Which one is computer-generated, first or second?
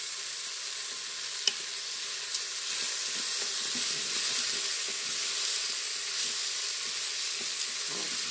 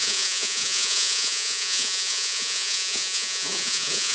second